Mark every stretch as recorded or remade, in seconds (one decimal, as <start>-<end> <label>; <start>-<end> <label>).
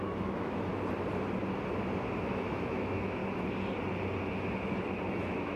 0.0-0.7 remade; 0.7-2.2 recorded; 2.2-3.2 remade; 3.2-5.1 recorded; 5.1-5.6 remade